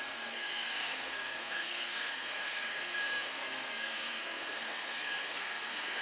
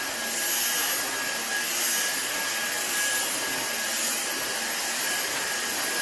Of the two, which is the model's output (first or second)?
first